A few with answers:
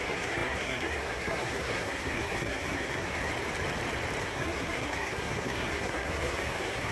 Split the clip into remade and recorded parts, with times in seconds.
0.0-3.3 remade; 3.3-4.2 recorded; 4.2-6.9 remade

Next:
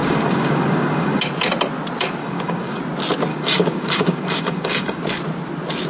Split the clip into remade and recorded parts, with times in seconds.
0.0-1.2 remade; 1.2-2.2 recorded; 2.2-2.8 remade; 2.8-3.3 recorded; 3.3-5.0 remade; 5.0-5.9 recorded